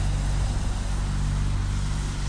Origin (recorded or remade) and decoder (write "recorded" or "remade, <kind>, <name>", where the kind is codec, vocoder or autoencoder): recorded